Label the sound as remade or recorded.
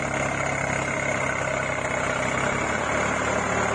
recorded